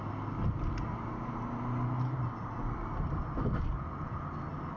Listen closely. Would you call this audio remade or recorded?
recorded